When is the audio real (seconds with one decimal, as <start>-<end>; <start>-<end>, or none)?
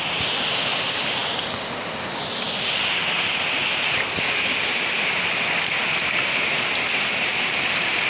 0.0-8.1